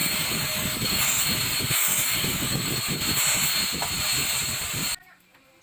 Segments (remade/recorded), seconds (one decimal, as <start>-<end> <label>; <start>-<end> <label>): 0.0-1.2 remade; 1.2-1.9 recorded; 1.9-2.8 remade; 2.8-5.6 recorded